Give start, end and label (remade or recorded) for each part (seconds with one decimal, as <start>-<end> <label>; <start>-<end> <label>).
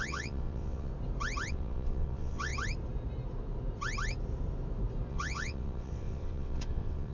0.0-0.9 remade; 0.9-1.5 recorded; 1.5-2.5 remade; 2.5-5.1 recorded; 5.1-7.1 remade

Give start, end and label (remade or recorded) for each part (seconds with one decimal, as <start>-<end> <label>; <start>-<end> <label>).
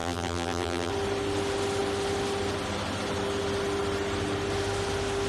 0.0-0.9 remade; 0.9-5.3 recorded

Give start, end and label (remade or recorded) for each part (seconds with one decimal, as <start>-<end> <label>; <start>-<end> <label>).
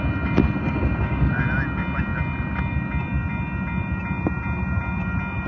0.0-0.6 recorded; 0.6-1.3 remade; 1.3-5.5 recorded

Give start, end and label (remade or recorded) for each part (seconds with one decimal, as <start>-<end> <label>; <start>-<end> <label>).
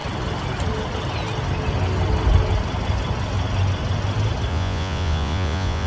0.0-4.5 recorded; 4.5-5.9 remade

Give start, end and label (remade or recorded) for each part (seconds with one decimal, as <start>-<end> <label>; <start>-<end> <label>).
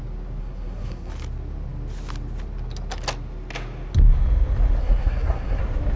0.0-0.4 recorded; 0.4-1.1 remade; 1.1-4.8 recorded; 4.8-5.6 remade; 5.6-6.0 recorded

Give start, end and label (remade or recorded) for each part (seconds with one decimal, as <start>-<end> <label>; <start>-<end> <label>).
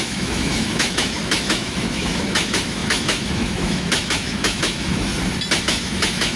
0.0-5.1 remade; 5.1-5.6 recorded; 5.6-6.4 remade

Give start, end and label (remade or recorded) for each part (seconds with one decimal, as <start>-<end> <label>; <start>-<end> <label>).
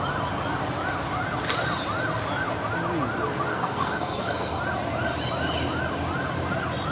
0.0-3.5 recorded; 3.5-4.6 remade; 4.6-6.9 recorded